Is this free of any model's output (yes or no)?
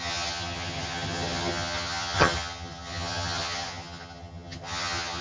no